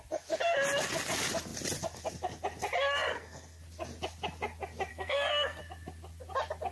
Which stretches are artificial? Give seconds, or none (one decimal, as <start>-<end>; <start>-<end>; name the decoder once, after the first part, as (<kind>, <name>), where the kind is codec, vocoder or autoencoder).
3.1-3.6 (codec, SNAC); 4.9-5.6

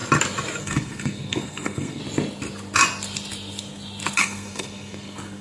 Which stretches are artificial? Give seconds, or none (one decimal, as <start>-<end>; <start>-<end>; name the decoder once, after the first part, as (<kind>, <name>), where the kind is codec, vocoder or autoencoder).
0.6-2.0 (codec, SNAC); 4.2-5.4

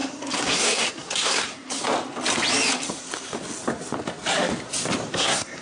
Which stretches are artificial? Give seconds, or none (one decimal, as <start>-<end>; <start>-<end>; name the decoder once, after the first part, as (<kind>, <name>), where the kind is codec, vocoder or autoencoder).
0.0-1.8 (codec, SNAC); 5.1-5.6

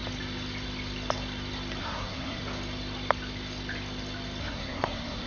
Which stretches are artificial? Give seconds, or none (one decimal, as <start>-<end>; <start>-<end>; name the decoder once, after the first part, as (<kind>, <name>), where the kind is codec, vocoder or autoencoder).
1.8-2.4 (codec, SNAC); 4.4-5.3